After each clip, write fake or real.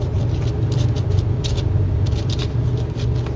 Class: real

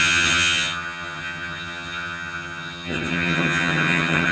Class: fake